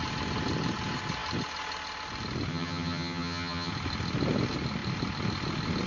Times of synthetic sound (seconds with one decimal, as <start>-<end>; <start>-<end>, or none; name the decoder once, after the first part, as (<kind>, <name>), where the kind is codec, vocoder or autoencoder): 2.5-3.7 (vocoder, HiFi-GAN)